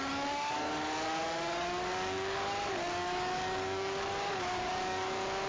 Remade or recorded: remade